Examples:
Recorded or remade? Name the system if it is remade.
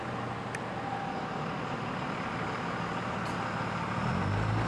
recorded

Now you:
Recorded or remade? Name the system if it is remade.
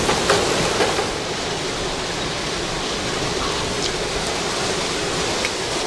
recorded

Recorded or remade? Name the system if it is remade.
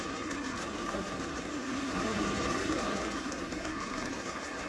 remade, codec, SNAC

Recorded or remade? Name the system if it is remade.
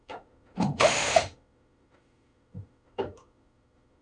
remade, autoencoder, DAC-VAE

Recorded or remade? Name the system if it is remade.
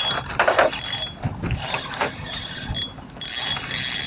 recorded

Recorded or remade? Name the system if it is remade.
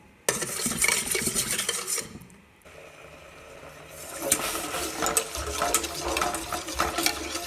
recorded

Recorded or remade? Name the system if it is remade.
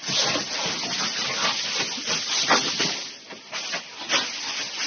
recorded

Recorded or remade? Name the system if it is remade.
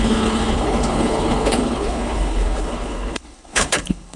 remade, codec, HILCodec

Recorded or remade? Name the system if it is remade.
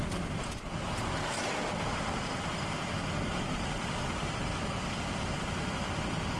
recorded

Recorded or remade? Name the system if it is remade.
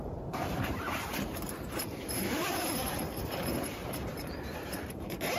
remade, vocoder, BigVGAN v2